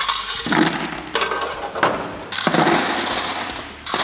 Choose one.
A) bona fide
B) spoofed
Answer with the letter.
A